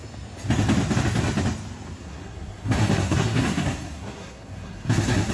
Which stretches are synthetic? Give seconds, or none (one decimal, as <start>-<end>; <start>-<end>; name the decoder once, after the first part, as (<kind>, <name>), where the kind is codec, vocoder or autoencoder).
2.0-5.3 (codec, SNAC)